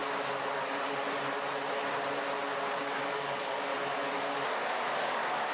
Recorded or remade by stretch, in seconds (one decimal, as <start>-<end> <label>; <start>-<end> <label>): 0.0-2.8 recorded; 2.8-3.7 remade; 3.7-4.5 recorded; 4.5-5.5 remade